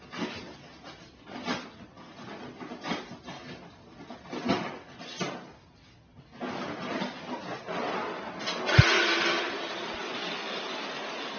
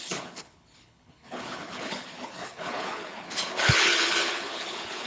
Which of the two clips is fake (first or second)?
second